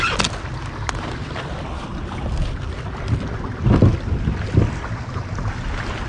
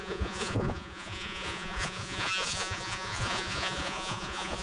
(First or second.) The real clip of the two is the first